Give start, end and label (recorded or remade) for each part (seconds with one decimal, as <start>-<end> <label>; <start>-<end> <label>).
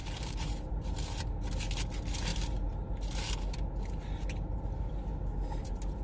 0.0-0.7 remade; 0.7-2.3 recorded; 2.3-2.9 remade; 2.9-6.0 recorded